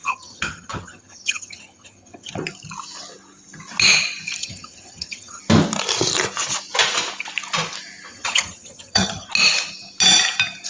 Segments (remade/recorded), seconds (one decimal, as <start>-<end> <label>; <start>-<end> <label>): 0.0-2.3 remade; 2.3-4.4 recorded; 4.4-5.4 remade; 5.4-8.1 recorded; 8.1-9.3 remade; 9.3-10.7 recorded

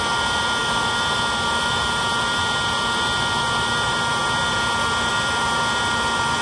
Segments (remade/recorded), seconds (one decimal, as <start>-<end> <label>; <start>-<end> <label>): 0.0-6.4 recorded

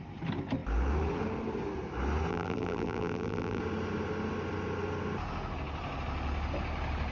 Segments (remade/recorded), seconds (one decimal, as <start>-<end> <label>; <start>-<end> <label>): 0.0-2.3 recorded; 2.3-3.6 remade; 3.6-7.1 recorded